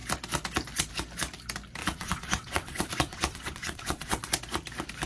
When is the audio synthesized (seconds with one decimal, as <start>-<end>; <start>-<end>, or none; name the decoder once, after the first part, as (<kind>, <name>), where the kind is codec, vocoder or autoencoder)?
1.8-4.3 (vocoder, WaveNeXt)